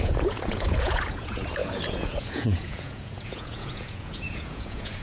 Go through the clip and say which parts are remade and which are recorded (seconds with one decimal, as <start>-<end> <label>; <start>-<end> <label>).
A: 0.0-5.0 remade